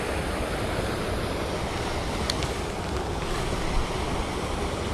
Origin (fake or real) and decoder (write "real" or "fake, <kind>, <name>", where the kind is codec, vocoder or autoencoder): real